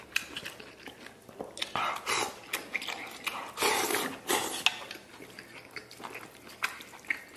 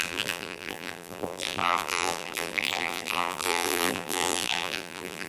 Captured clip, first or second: first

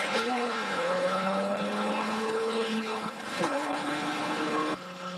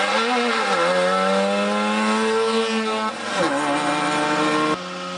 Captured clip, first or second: second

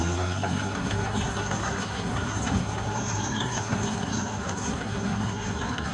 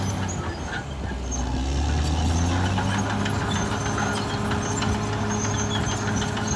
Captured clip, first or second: second